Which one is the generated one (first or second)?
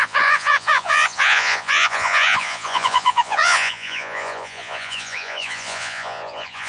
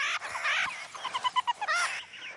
first